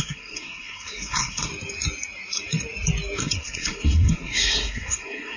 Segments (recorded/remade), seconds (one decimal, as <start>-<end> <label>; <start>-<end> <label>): 0.0-1.5 remade; 1.5-3.2 recorded; 3.2-5.4 remade